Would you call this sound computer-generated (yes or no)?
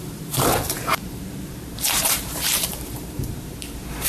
yes